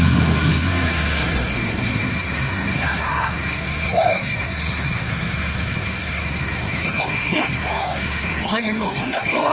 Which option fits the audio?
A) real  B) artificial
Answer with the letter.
B